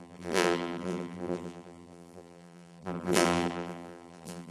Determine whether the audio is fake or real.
fake